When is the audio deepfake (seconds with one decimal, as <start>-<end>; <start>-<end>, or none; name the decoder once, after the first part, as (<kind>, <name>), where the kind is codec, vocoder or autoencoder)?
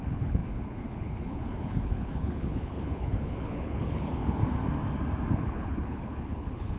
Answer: 0.0-4.4 (codec, HILCodec); 5.3-6.8